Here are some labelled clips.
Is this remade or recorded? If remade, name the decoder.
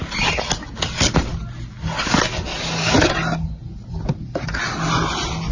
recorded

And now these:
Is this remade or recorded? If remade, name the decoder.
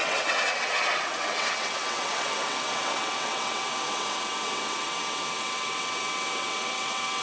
remade, vocoder, WaveNeXt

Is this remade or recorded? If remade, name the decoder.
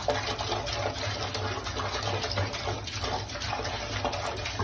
recorded